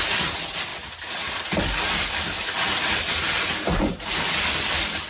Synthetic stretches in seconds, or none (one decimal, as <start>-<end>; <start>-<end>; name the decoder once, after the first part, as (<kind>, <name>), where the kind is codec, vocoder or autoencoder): none